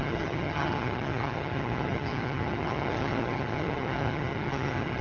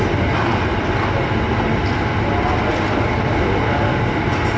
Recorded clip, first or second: second